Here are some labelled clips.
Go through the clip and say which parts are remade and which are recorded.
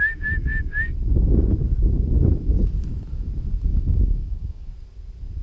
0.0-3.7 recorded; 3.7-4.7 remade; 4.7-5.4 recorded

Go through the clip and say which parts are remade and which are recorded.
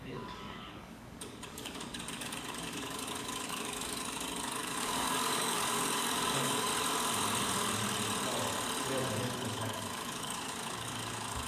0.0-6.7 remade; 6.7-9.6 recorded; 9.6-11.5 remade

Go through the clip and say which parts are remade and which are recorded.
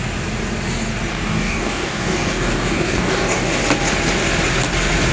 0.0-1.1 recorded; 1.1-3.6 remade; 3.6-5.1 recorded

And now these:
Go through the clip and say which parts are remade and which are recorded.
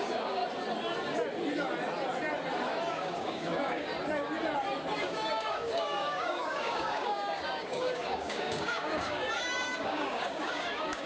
0.0-0.4 remade; 0.4-2.9 recorded; 2.9-3.9 remade; 3.9-5.0 recorded; 5.0-11.1 remade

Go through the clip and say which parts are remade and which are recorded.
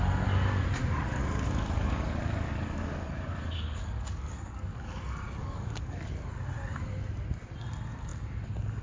0.0-0.8 recorded; 0.8-5.0 remade; 5.0-5.4 recorded; 5.4-6.1 remade; 6.1-8.8 recorded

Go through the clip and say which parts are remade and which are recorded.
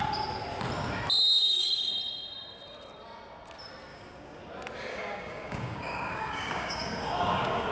0.0-1.3 recorded; 1.3-1.9 remade; 1.9-3.9 recorded; 3.9-4.4 remade; 4.4-4.9 recorded; 4.9-7.7 remade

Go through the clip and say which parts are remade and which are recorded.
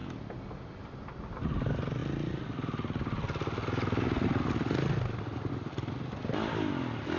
0.0-7.2 recorded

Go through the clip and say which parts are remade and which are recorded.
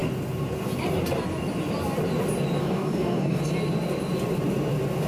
0.0-2.6 recorded; 2.6-3.4 remade; 3.4-5.1 recorded